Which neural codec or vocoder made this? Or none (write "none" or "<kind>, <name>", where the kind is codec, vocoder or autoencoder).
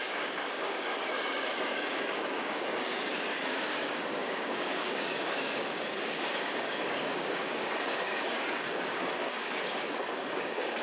codec, DAC